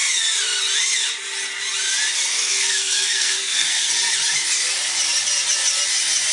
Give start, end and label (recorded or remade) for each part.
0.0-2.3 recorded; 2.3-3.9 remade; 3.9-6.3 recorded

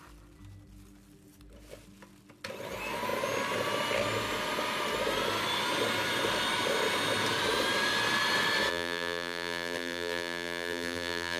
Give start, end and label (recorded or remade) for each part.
0.0-8.7 recorded; 8.7-11.4 remade

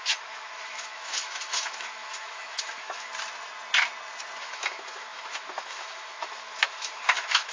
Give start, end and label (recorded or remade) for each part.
0.0-3.1 remade; 3.1-4.4 recorded; 4.4-7.5 remade

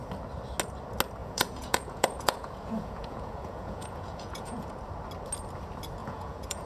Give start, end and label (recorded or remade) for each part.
0.0-1.2 recorded; 1.2-4.7 remade; 4.7-6.0 recorded; 6.0-6.7 remade

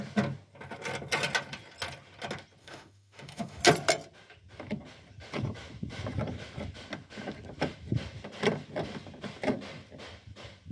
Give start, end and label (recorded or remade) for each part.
0.0-2.6 recorded; 2.6-3.6 remade; 3.6-10.7 recorded

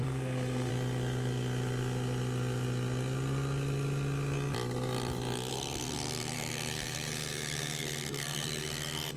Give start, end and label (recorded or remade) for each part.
0.0-0.7 remade; 0.7-5.5 recorded; 5.5-9.2 remade